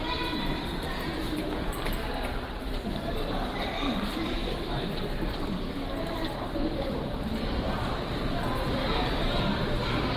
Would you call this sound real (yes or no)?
no